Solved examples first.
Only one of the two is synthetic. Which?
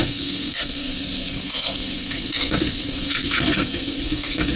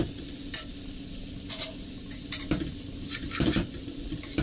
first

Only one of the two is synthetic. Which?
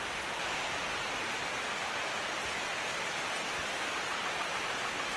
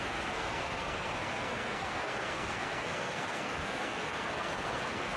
second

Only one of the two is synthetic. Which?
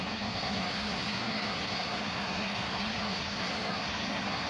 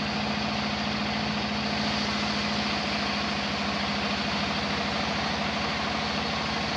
first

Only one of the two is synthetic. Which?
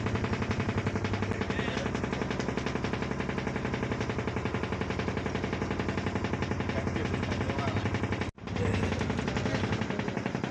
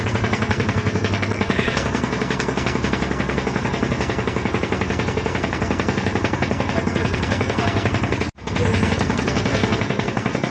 second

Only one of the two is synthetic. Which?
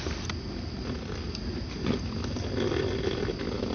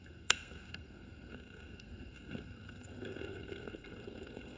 second